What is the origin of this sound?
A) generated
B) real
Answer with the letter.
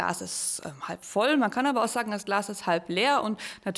B